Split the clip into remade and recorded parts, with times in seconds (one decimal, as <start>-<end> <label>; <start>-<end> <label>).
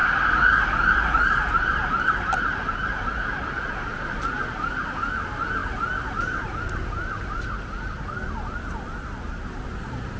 0.0-10.2 recorded